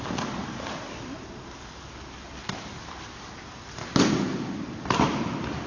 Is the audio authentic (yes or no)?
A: yes